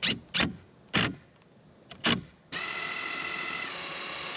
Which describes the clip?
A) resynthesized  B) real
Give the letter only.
B